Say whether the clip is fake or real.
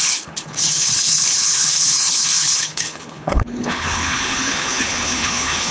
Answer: fake